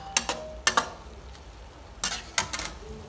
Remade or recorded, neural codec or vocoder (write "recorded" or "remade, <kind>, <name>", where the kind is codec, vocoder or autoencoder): recorded